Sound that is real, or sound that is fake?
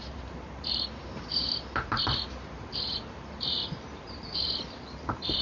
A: fake